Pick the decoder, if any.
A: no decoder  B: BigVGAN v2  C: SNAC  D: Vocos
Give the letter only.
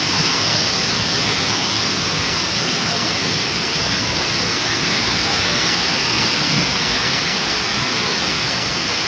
C